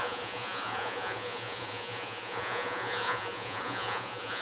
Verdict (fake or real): fake